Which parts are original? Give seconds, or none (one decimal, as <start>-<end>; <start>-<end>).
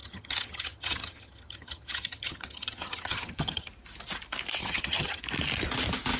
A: 3.7-4.6; 5.2-6.2